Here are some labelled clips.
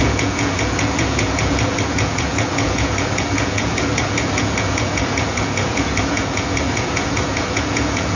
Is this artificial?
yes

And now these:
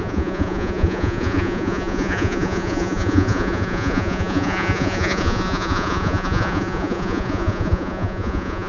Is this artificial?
yes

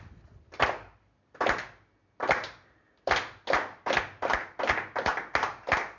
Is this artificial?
no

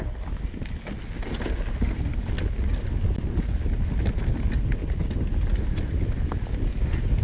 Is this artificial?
no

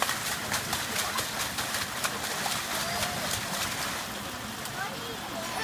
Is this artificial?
no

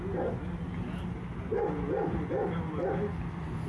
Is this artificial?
no